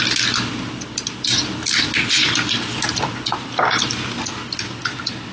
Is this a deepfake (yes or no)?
no